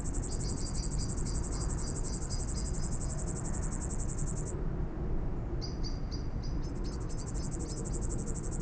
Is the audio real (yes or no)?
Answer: yes